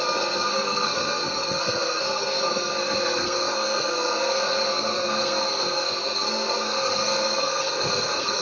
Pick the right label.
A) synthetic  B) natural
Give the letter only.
A